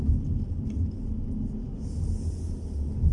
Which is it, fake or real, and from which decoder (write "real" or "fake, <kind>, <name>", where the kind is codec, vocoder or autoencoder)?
real